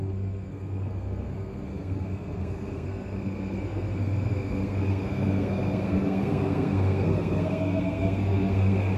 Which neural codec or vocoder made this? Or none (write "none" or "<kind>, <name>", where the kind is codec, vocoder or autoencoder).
codec, SNAC